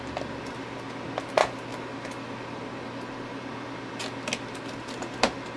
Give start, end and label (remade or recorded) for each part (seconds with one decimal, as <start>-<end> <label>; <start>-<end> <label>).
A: 0.0-5.6 recorded